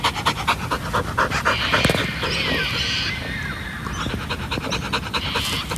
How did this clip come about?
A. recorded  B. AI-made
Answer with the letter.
A